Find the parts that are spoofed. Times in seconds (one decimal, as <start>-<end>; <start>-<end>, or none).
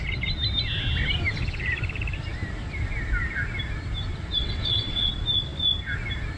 4.4-5.1